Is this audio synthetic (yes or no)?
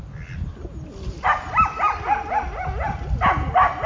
no